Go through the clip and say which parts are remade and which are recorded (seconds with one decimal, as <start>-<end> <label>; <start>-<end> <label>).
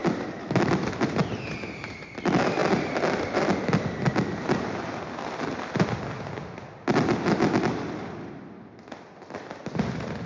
0.0-10.3 recorded